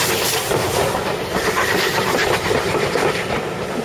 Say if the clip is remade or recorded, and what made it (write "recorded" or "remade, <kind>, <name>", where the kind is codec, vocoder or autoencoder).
recorded